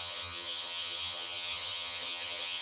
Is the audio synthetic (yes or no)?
yes